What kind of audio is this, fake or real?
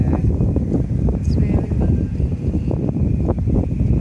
fake